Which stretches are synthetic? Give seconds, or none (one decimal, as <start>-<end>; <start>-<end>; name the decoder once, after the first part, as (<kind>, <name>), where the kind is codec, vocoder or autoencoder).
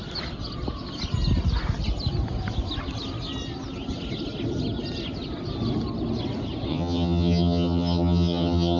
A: 6.7-8.8 (vocoder, HiFi-GAN)